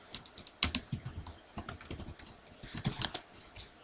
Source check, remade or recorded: recorded